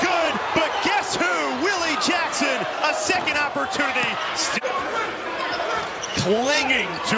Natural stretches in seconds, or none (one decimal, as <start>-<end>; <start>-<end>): 0.6-4.2